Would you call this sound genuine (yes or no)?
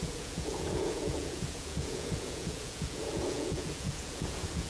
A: no